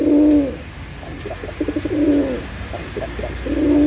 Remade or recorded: recorded